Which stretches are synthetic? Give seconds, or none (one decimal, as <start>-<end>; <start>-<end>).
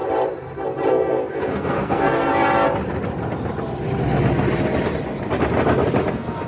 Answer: 0.9-2.3; 6.1-6.5